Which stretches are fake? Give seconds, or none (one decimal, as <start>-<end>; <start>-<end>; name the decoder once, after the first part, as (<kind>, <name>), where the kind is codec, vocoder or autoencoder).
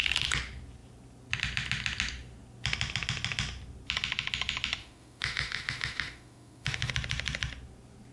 4.8-6.9 (autoencoder, DAC-VAE)